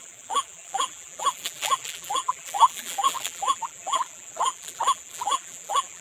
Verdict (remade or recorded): remade